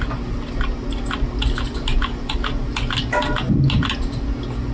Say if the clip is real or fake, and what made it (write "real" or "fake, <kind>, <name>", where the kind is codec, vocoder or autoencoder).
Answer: real